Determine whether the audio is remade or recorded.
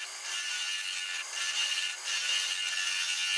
recorded